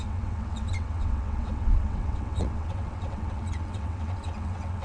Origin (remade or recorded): remade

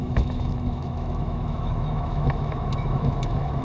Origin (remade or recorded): remade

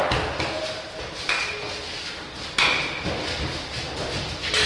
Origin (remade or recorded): recorded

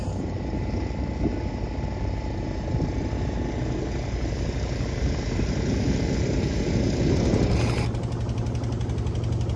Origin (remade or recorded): recorded